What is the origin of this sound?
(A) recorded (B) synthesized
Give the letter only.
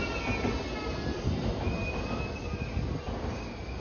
A